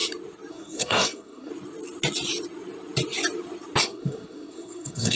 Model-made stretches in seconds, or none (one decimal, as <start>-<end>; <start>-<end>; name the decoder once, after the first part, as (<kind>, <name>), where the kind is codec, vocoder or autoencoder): 0.5-1.5 (codec, SNAC); 3.8-5.2